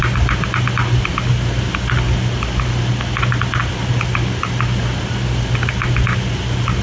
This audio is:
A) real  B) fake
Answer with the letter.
A